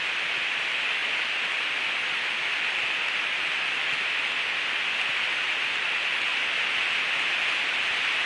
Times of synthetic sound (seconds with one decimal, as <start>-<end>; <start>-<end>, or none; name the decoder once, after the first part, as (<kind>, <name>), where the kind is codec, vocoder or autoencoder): none